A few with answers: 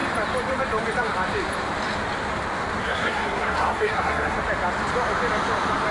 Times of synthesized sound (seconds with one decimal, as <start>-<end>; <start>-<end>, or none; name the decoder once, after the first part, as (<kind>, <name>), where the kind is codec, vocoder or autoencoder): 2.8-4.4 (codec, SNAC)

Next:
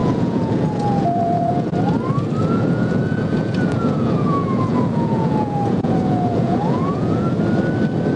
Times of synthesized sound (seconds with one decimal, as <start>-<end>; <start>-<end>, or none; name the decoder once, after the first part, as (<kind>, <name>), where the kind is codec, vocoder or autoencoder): 0.0-1.7 (vocoder, Vocos); 2.4-7.3

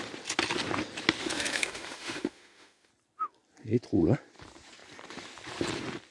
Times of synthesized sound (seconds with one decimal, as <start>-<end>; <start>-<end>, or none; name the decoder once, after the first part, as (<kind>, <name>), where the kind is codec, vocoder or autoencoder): 1.2-2.9 (autoencoder, DAC-VAE)